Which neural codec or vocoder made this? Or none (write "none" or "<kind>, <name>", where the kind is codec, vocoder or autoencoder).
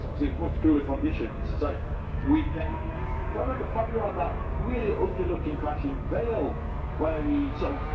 codec, DAC